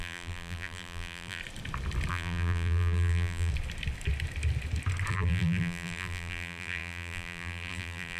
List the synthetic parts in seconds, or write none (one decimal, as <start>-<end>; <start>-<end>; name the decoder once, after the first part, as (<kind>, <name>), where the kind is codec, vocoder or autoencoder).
0.0-1.4 (vocoder, BigVGAN v2); 2.1-3.5; 5.1-8.2